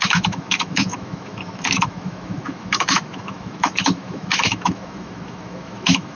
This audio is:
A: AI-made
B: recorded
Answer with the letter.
A